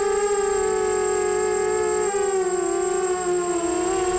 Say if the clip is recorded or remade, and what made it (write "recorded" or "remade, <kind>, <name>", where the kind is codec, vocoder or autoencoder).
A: recorded